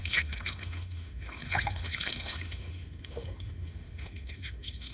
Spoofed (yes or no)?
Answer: yes